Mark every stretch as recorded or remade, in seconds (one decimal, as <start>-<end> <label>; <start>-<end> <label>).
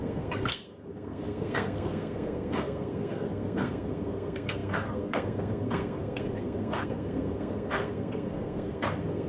0.0-9.3 remade